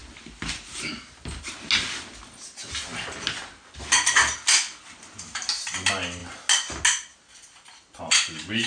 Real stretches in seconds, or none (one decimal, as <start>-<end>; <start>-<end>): 0.0-8.7